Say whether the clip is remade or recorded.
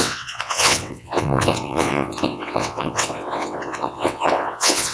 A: remade